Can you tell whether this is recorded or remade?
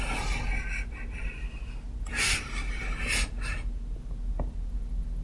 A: recorded